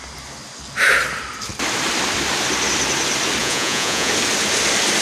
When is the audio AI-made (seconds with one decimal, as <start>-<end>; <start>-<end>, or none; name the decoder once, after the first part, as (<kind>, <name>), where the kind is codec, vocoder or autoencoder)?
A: 3.4-4.1 (vocoder, Vocos)